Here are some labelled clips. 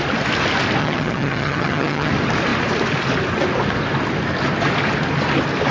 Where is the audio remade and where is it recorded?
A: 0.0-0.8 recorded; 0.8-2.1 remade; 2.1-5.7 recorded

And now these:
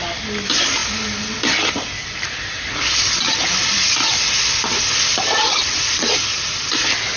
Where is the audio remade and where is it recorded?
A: 0.0-7.2 recorded

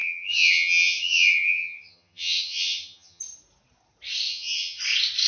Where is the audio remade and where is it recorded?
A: 0.0-3.2 remade; 3.2-4.3 recorded; 4.3-4.8 remade; 4.8-5.3 recorded

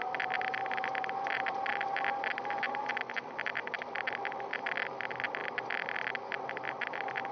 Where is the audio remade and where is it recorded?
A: 0.0-7.3 recorded

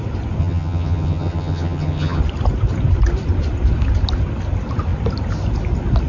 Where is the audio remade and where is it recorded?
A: 0.0-0.4 recorded; 0.4-2.2 remade; 2.2-6.1 recorded